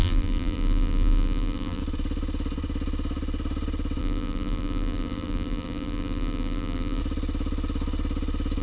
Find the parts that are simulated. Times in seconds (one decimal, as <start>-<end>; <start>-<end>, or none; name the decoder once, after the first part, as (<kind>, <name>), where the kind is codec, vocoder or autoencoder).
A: 0.0-1.8 (vocoder, BigVGAN v2); 4.0-7.0